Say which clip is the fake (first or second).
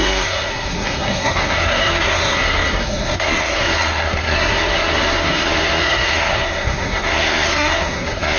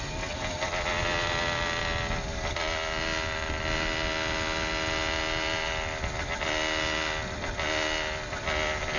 first